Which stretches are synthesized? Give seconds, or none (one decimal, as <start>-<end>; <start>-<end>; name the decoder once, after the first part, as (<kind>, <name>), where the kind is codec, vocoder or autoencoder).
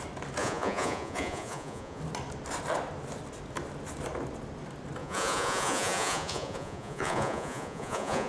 0.4-2.0 (vocoder, Vocos); 5.0-8.3